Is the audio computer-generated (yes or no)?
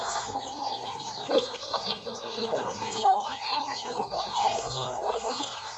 yes